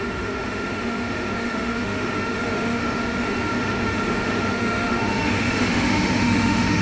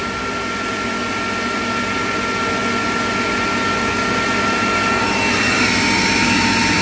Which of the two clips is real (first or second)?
second